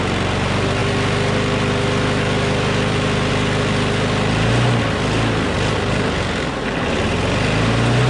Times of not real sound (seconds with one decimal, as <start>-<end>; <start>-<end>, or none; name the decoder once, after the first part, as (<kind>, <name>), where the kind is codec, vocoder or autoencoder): none